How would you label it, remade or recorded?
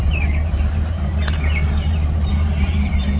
remade